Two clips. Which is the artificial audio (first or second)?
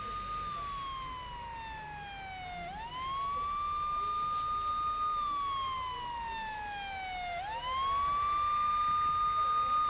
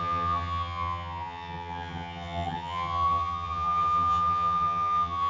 second